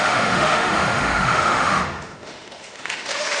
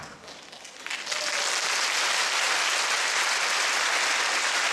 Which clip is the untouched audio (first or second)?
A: second